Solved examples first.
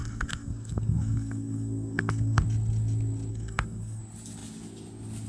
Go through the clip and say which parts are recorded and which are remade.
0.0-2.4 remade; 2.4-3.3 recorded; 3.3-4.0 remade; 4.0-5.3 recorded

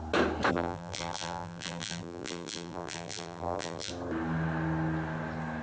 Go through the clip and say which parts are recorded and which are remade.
0.0-0.5 recorded; 0.5-3.9 remade; 3.9-5.6 recorded

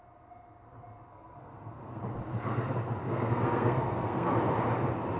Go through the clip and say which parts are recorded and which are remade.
0.0-1.1 recorded; 1.1-2.0 remade; 2.0-3.0 recorded; 3.0-4.3 remade; 4.3-5.2 recorded

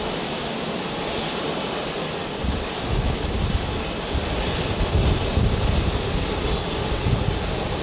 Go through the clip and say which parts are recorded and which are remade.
0.0-2.2 recorded; 2.2-4.2 remade; 4.2-7.8 recorded